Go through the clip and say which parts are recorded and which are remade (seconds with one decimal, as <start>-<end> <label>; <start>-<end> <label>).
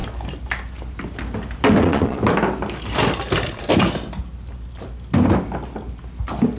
0.0-1.8 recorded; 1.8-2.2 remade; 2.2-6.6 recorded